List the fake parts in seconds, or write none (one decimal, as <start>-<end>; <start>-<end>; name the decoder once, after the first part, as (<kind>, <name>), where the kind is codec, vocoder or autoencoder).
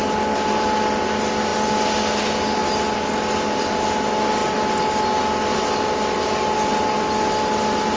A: none